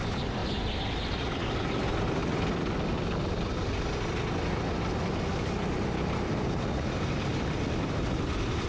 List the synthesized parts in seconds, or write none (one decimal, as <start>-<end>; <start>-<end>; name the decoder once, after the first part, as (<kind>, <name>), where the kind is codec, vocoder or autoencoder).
0.0-0.4 (vocoder, BigVGAN v2); 1.4-2.2; 7.1-8.7